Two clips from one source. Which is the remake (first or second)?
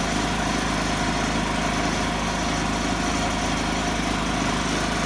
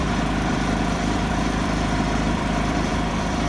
second